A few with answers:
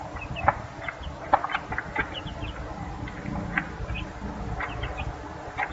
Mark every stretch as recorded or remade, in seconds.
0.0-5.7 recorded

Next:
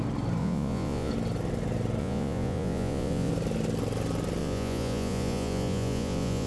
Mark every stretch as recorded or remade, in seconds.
0.0-0.4 recorded; 0.4-1.1 remade; 1.1-2.0 recorded; 2.0-3.3 remade; 3.3-4.4 recorded; 4.4-6.5 remade

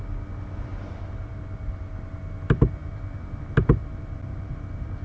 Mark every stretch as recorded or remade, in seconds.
0.0-0.7 recorded; 0.7-2.2 remade; 2.2-2.8 recorded; 2.8-3.4 remade; 3.4-3.8 recorded; 3.8-5.0 remade

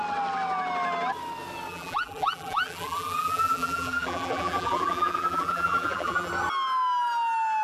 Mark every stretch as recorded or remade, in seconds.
0.0-1.7 recorded; 1.7-6.3 remade; 6.3-7.6 recorded

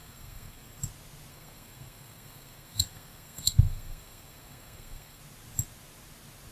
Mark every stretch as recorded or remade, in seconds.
0.0-0.8 remade; 0.8-1.3 recorded; 1.3-5.2 remade; 5.2-6.5 recorded

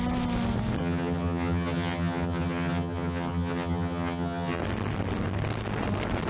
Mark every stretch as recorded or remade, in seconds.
0.0-0.8 recorded; 0.8-4.6 remade; 4.6-6.3 recorded

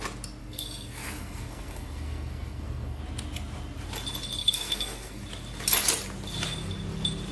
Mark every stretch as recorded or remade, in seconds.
0.0-0.4 recorded; 0.4-3.0 remade; 3.0-4.4 recorded; 4.4-5.2 remade; 5.2-7.3 recorded